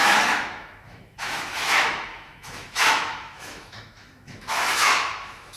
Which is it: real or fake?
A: fake